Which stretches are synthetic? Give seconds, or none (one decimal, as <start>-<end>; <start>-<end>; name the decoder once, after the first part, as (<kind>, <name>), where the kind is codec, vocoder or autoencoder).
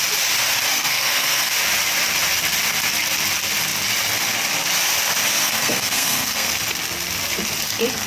0.7-1.5 (codec, SNAC); 5.4-6.5